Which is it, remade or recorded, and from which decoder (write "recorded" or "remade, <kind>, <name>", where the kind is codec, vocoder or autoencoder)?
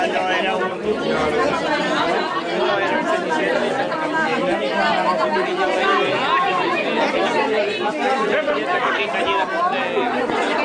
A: recorded